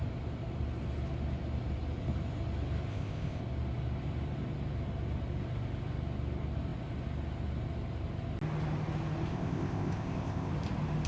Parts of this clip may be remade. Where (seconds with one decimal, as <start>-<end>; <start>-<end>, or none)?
2.9-3.4; 9.3-10.5